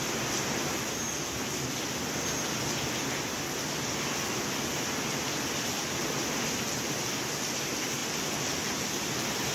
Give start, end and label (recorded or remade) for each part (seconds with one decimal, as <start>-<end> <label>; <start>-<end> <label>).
0.0-9.5 recorded

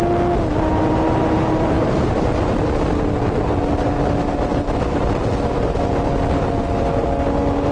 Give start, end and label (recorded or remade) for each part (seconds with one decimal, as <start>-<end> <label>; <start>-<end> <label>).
0.0-0.7 recorded; 0.7-2.6 remade; 2.6-7.7 recorded